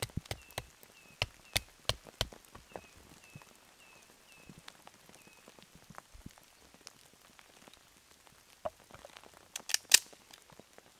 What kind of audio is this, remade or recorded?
recorded